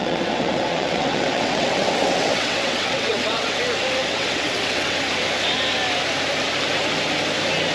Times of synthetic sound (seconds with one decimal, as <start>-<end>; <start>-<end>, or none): 0.0-3.6; 4.0-5.0